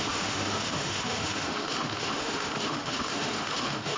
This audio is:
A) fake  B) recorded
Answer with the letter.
A